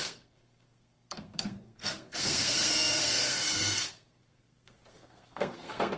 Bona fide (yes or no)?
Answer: no